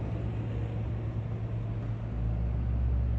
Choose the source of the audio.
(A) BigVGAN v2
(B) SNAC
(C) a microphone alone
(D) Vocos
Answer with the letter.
C